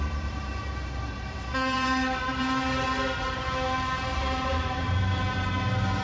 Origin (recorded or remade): remade